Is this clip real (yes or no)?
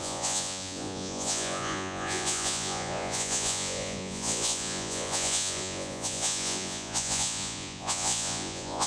no